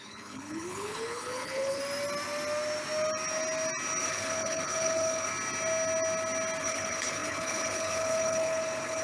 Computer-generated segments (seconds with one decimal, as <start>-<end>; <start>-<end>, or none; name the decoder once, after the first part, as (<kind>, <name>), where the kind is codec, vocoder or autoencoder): 0.0-1.8 (codec, HILCodec); 4.0-5.3; 6.6-9.0